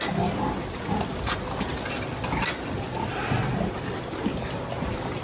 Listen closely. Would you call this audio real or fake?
real